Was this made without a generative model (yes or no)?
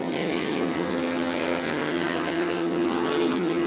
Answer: no